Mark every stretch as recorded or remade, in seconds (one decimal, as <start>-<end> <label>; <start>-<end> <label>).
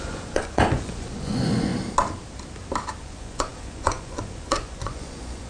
0.0-1.7 remade; 1.7-3.0 recorded; 3.0-5.5 remade